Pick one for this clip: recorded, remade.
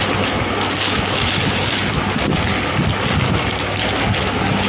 recorded